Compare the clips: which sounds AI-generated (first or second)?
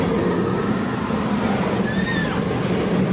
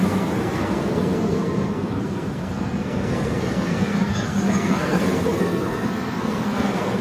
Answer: second